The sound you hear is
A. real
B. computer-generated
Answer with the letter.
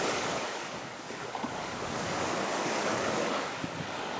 B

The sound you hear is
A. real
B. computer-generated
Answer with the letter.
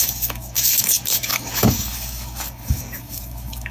B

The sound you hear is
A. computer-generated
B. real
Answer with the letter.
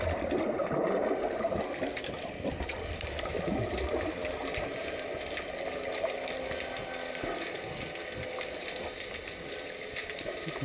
B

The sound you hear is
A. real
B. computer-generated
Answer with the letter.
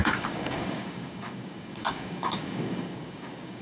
B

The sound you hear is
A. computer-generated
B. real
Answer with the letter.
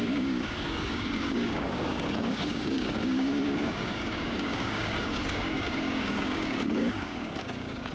A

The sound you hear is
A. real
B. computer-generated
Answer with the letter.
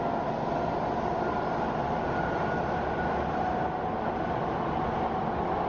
A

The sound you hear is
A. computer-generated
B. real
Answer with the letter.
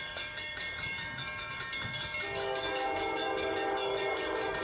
A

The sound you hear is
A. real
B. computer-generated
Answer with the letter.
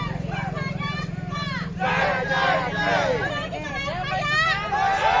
A